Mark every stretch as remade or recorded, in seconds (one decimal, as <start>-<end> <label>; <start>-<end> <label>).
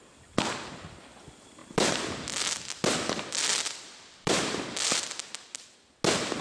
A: 0.0-1.6 recorded; 1.6-4.6 remade; 4.6-6.4 recorded